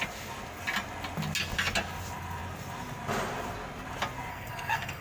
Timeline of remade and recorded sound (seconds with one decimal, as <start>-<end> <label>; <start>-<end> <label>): 0.0-4.3 recorded; 4.3-5.0 remade